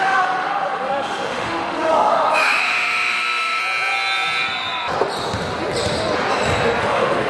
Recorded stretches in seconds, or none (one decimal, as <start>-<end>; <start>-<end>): 3.6-6.8